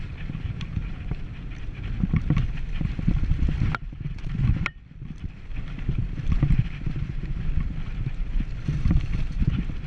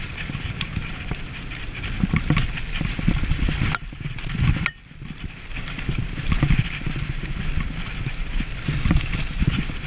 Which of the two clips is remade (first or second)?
first